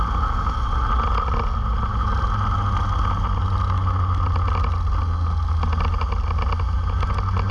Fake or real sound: real